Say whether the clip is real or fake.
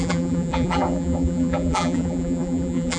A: fake